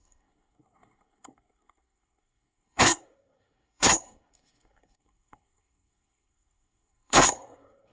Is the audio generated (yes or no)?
yes